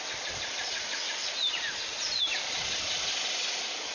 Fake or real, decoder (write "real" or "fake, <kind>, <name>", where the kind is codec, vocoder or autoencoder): real